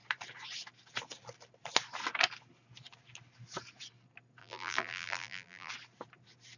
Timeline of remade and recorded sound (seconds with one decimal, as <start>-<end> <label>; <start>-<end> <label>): 0.0-4.4 recorded; 4.4-5.7 remade; 5.7-6.6 recorded